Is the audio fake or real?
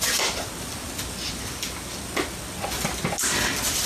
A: real